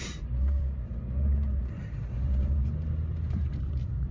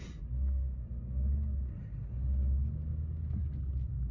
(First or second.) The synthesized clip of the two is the first